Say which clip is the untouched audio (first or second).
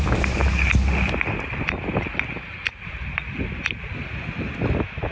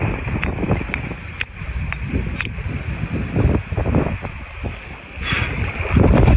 first